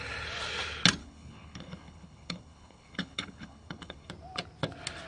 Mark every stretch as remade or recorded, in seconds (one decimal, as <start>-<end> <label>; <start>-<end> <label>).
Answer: 0.0-1.0 recorded; 1.0-4.1 remade; 4.1-5.1 recorded